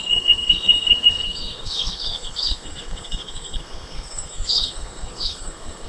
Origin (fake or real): fake